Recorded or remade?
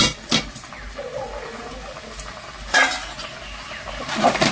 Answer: recorded